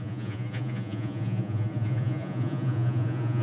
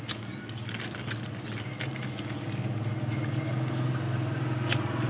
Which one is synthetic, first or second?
first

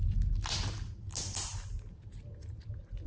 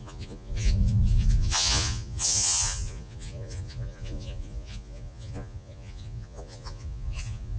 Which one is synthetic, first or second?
second